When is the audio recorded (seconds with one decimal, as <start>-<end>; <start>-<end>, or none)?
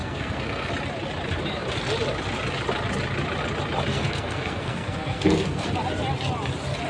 0.7-3.9; 5.7-6.9